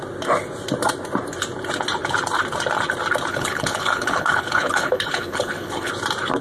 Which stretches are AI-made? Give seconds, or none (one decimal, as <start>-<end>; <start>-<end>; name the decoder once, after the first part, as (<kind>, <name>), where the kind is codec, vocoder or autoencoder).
3.3-5.9 (codec, HILCodec)